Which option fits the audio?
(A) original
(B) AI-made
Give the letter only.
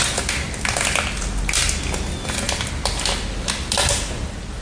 A